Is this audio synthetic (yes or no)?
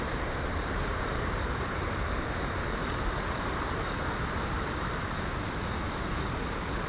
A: yes